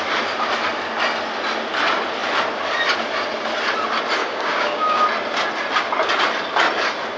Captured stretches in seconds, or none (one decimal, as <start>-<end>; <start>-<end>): 0.0-4.2; 5.0-7.2